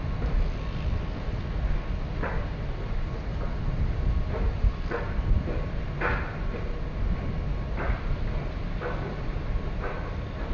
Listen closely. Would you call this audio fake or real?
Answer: real